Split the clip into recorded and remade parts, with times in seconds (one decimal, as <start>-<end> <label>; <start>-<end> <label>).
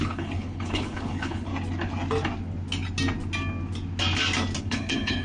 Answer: 0.0-1.5 remade; 1.5-4.6 recorded; 4.6-5.2 remade